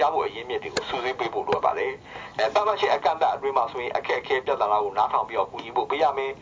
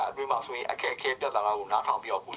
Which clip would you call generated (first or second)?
second